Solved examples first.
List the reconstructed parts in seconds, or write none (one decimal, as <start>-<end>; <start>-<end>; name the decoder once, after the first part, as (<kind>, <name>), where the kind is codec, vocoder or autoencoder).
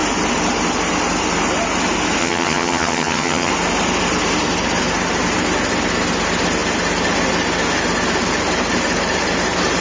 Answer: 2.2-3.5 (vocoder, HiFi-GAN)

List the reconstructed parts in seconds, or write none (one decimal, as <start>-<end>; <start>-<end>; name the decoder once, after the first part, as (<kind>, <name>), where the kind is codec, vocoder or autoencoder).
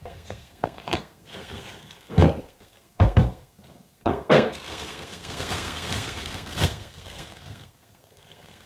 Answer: 0.0-8.7 (codec, SNAC)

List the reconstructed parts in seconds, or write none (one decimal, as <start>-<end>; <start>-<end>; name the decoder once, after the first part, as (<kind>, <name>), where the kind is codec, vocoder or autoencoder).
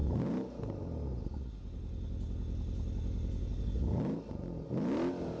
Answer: none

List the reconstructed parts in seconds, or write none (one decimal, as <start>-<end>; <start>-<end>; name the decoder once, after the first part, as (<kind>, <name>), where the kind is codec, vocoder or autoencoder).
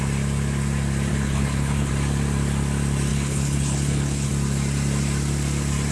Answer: 1.1-1.9 (codec, HILCodec); 3.1-4.3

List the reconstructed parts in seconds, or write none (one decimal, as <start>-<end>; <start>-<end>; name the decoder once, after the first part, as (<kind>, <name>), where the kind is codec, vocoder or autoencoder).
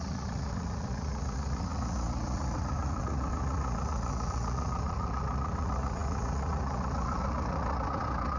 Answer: 0.0-8.4 (vocoder, Vocos)